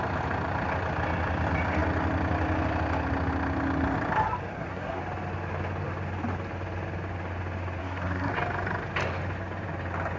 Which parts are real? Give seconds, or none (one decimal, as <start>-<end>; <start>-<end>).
0.0-4.5; 5.0-7.8; 8.3-10.2